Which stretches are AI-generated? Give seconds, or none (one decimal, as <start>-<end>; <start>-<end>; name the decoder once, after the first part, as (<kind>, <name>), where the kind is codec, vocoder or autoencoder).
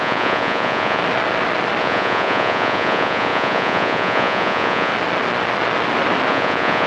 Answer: 0.0-1.0 (vocoder, Vocos); 1.8-4.9; 6.3-6.9